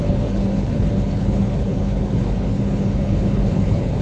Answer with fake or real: fake